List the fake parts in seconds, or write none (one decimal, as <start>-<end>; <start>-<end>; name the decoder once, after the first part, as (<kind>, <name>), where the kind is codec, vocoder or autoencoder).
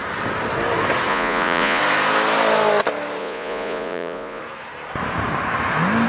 1.1-1.8 (vocoder, Vocos); 3.2-4.4